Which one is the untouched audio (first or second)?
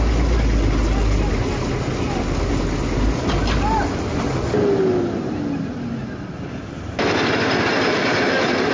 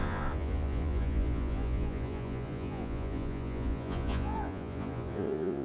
first